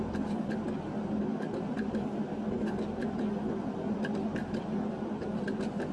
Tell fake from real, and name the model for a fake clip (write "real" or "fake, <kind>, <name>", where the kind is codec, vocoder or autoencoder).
real